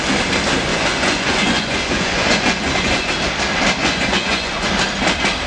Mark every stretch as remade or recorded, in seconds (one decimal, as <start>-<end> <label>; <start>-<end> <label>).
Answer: 0.0-0.7 recorded; 0.7-3.1 remade; 3.1-3.8 recorded; 3.8-4.7 remade; 4.7-5.5 recorded